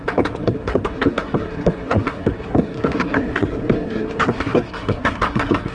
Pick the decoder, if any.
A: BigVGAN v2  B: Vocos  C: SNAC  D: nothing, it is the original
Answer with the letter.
C